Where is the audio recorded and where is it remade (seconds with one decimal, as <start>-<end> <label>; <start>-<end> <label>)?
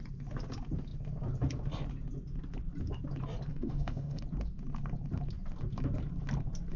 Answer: 0.0-3.5 recorded; 3.5-4.2 remade; 4.2-6.8 recorded